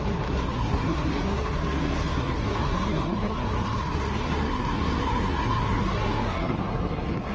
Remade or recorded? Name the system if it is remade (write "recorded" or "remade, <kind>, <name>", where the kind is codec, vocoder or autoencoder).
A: remade, codec, SNAC